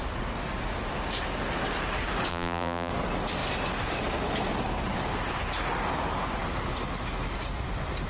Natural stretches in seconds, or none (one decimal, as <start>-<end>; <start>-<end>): 0.0-2.3; 2.9-8.1